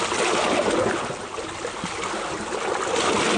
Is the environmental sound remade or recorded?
recorded